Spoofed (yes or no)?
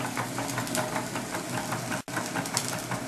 no